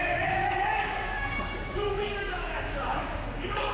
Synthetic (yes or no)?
yes